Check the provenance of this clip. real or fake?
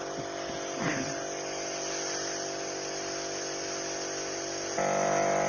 real